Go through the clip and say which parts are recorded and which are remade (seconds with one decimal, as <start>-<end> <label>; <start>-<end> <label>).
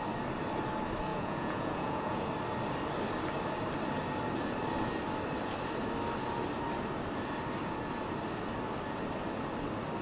0.0-1.1 recorded; 1.1-2.3 remade; 2.3-10.0 recorded